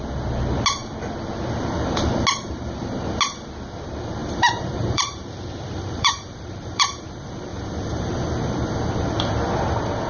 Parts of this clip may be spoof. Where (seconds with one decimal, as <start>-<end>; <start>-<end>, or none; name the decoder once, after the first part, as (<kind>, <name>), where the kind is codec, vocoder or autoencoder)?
4.2-7.1 (vocoder, BigVGAN v2); 7.5-8.2